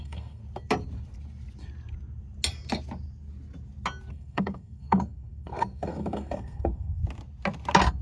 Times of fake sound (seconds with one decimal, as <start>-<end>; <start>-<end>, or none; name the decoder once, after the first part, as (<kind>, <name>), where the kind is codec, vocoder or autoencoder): 0.0-0.4 (codec, SNAC); 4.1-7.0